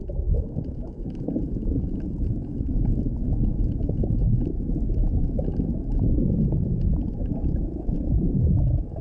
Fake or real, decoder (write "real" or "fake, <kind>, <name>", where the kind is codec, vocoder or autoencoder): fake, autoencoder, DAC-VAE